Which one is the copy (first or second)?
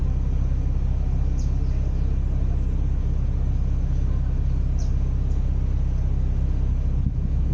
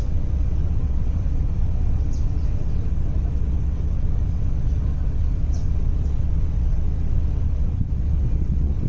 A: second